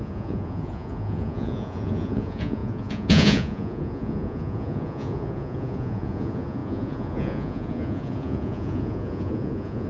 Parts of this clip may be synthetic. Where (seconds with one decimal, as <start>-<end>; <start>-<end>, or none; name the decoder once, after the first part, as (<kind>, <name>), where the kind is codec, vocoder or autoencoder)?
0.0-9.9 (vocoder, Vocos)